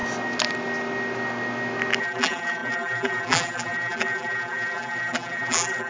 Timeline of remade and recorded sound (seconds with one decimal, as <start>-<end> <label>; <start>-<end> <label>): 0.0-2.0 recorded; 2.0-5.9 remade